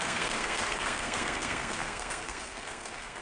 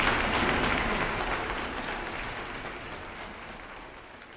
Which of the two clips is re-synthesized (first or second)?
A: first